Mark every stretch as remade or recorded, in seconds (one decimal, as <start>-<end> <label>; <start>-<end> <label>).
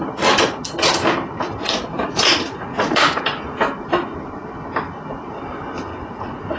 0.0-1.6 recorded; 1.6-3.2 remade; 3.2-5.9 recorded; 5.9-6.6 remade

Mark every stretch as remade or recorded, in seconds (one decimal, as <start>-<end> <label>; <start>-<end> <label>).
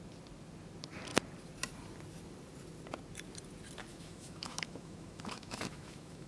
0.0-3.9 recorded; 3.9-6.3 remade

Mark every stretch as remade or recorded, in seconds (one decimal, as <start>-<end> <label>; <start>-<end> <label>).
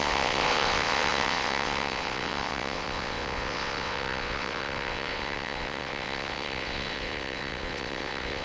0.0-8.4 remade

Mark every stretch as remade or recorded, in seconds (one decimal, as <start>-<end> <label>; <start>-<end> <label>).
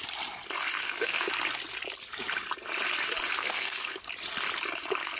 0.0-0.8 recorded; 0.8-1.3 remade; 1.3-3.4 recorded; 3.4-4.1 remade; 4.1-5.2 recorded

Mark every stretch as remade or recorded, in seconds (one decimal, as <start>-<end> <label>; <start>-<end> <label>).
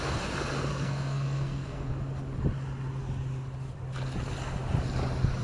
0.0-0.7 recorded; 0.7-1.9 remade; 1.9-5.4 recorded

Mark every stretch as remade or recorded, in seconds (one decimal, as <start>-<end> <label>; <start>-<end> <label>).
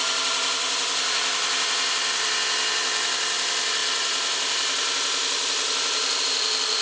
0.0-6.8 recorded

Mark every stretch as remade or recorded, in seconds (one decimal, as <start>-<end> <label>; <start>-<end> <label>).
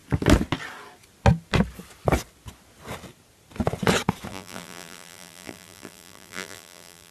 0.0-4.3 recorded; 4.3-7.1 remade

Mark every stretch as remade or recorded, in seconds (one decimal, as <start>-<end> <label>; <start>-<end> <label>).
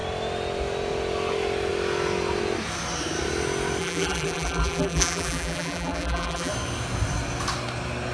0.0-3.8 recorded; 3.8-6.5 remade; 6.5-8.1 recorded